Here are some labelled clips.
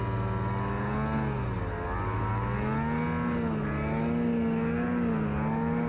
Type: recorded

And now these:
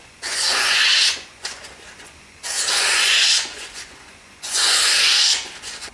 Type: remade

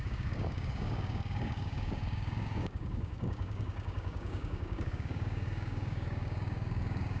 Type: remade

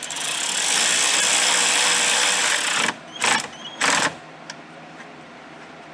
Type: remade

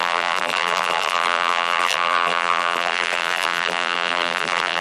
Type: remade